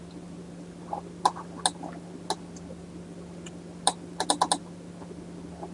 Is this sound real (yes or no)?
yes